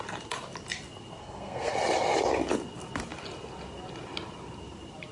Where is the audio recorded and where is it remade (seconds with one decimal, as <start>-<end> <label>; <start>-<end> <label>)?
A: 0.0-1.2 recorded; 1.2-1.7 remade; 1.7-5.1 recorded